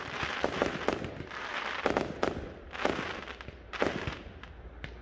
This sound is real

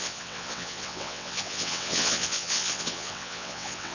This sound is fake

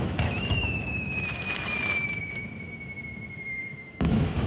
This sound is fake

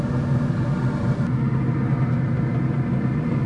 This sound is real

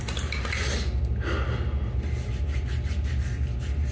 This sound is real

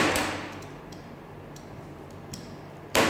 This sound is real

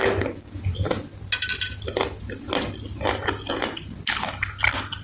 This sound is real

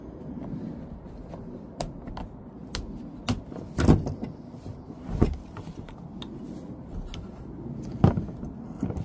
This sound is real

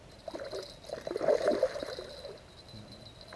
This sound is real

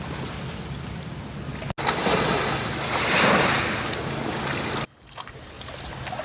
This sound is real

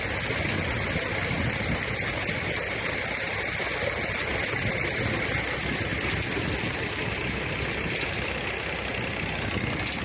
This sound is real